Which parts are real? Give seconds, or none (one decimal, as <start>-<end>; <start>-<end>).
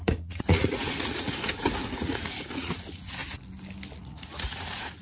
1.5-2.0; 3.2-4.0